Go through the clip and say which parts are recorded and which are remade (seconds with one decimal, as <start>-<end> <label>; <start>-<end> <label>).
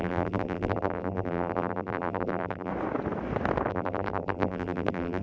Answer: 0.0-2.7 remade; 2.7-3.7 recorded; 3.7-5.2 remade